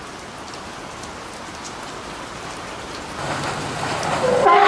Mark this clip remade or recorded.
recorded